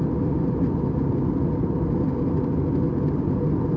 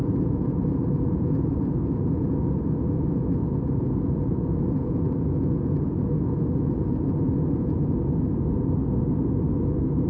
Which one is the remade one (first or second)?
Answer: second